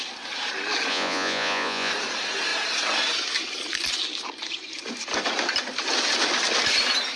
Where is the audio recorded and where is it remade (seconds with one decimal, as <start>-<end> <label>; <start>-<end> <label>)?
0.0-0.9 recorded; 0.9-1.9 remade; 1.9-7.2 recorded

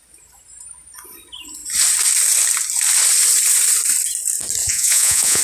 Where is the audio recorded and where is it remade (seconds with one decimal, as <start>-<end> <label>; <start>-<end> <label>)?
0.0-4.6 recorded; 4.6-5.4 remade

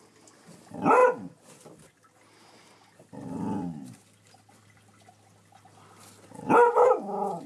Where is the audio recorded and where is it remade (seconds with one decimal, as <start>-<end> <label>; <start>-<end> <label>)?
0.0-7.5 recorded

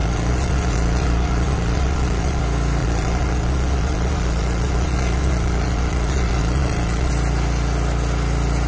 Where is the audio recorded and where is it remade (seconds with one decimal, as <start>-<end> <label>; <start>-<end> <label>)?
0.0-2.4 remade; 2.4-2.8 recorded; 2.8-7.1 remade; 7.1-8.7 recorded